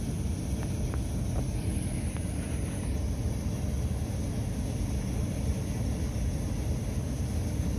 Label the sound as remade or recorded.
recorded